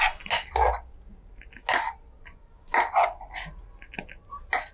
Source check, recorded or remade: recorded